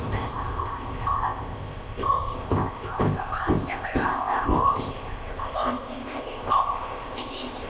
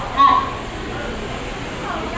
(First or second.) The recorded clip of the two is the second